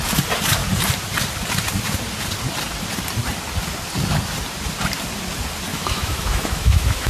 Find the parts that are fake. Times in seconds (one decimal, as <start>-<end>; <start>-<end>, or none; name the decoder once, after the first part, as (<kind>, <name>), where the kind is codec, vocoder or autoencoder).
5.7-7.1 (autoencoder, DAC-VAE)